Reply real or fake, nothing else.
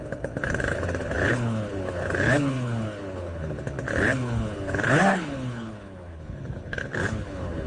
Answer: fake